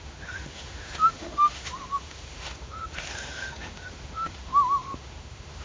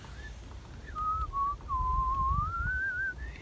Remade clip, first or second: first